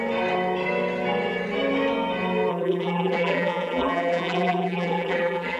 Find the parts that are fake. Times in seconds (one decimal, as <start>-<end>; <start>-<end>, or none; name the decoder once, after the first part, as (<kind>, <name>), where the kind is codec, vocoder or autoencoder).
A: 2.5-5.6 (vocoder, BigVGAN v2)